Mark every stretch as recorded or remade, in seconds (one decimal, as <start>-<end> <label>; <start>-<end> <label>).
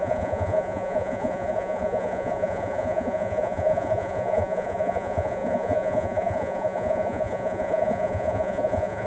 0.0-9.1 remade